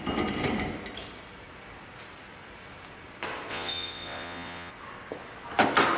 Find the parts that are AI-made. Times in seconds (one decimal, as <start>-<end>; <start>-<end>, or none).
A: 3.5-4.7